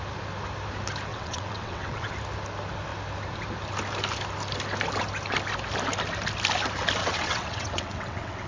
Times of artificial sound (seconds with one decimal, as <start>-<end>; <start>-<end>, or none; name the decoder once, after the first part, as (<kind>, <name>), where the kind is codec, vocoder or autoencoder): 1.1-2.1 (vocoder, WaveNeXt); 7.0-8.5